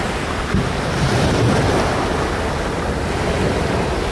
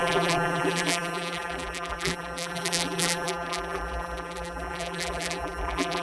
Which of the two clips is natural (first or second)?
first